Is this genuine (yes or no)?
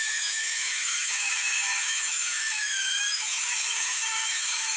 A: no